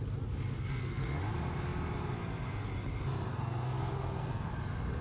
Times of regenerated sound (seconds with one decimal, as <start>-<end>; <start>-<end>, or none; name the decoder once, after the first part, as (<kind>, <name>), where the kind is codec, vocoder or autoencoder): 0.5-1.2 (codec, SNAC); 3.3-4.5